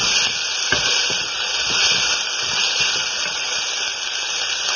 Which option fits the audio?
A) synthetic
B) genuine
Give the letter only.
B